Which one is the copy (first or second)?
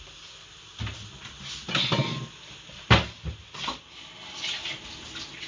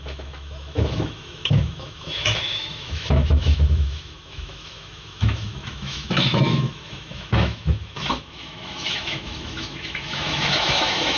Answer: second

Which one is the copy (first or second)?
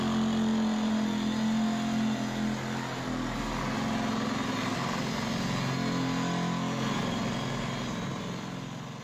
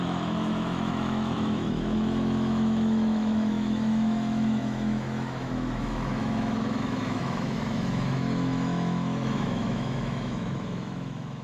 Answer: second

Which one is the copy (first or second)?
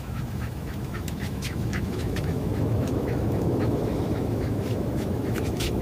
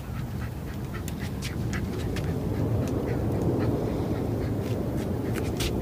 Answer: first